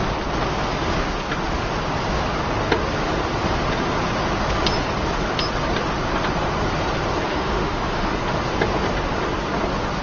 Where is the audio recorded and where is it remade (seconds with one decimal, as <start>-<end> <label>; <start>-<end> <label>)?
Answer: 0.0-7.3 recorded; 7.3-8.1 remade; 8.1-10.0 recorded